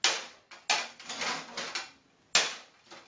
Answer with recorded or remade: recorded